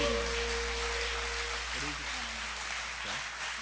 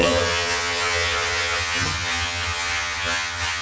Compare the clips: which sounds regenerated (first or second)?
second